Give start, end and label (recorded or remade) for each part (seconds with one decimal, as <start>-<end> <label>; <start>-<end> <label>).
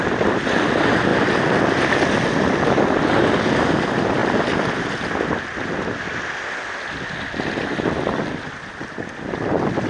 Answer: 0.0-9.9 recorded